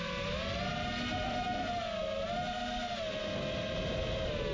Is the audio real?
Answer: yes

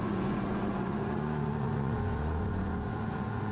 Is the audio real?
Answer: no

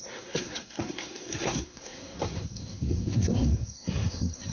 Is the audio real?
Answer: no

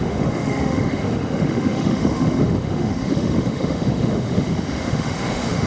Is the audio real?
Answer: no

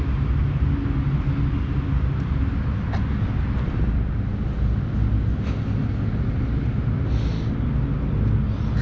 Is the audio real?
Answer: yes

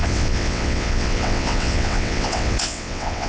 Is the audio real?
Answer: no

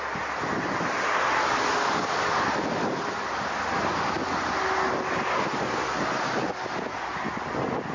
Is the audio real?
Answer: yes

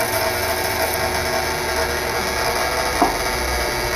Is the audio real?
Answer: yes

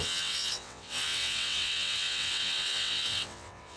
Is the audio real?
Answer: no